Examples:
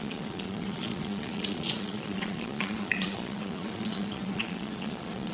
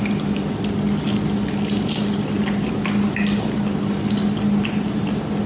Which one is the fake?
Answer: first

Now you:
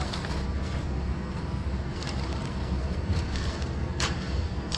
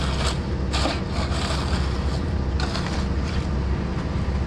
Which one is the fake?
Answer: first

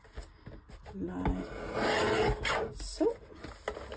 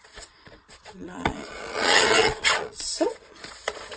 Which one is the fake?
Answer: second